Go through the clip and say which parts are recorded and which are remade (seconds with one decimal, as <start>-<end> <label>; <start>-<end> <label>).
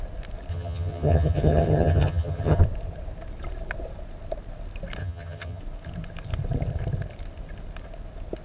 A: 0.0-0.5 recorded; 0.5-2.6 remade; 2.6-5.0 recorded; 5.0-5.6 remade; 5.6-8.4 recorded